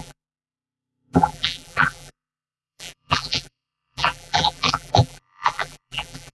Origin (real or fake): fake